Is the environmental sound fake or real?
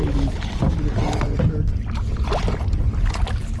real